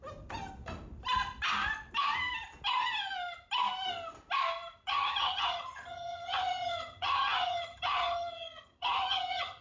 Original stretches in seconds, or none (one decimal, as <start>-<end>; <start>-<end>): 0.0-4.9